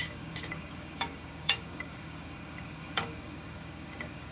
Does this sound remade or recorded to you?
remade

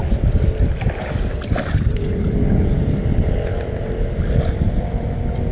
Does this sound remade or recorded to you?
recorded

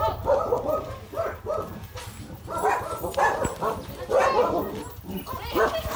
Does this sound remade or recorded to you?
recorded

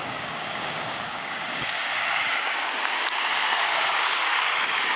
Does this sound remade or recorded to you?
remade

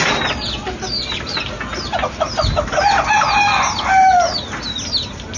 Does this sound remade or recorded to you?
recorded